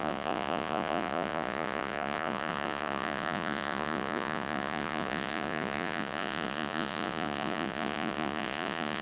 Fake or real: fake